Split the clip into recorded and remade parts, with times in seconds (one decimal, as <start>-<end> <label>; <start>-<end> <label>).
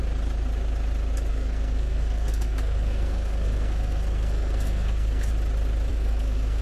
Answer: 0.0-1.3 recorded; 1.3-5.3 remade; 5.3-5.9 recorded; 5.9-6.6 remade